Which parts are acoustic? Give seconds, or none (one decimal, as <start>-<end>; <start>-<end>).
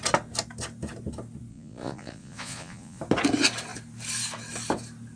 0.0-1.5; 3.0-5.2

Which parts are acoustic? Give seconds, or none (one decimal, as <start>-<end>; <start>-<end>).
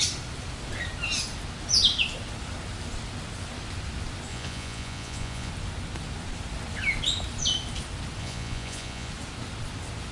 0.0-4.3; 5.5-8.2; 9.1-10.1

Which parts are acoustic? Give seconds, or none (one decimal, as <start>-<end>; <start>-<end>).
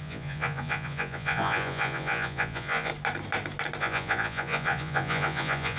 2.9-3.8